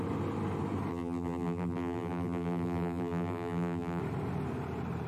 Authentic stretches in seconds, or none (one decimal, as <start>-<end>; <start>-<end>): 0.0-0.9; 4.0-5.1